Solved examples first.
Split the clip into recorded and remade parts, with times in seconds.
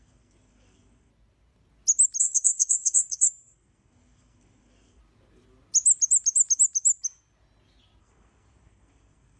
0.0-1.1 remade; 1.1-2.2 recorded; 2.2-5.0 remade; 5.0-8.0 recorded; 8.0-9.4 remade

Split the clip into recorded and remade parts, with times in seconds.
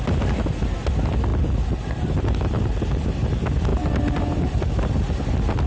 0.0-5.7 recorded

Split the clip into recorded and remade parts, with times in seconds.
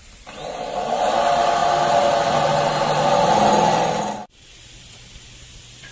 0.0-5.9 recorded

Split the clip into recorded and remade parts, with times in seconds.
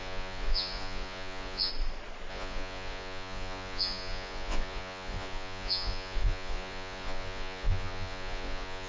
0.0-1.7 remade; 1.7-2.3 recorded; 2.3-8.9 remade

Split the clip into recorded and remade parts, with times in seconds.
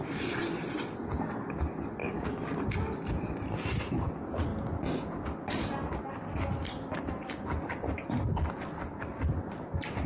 0.0-2.0 recorded; 2.0-2.7 remade; 2.7-10.1 recorded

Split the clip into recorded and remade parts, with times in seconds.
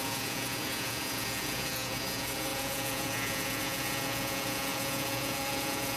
0.0-6.0 remade